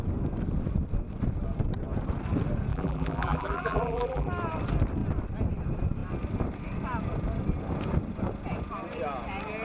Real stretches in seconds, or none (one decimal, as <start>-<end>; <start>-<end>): 0.0-2.7; 4.3-9.6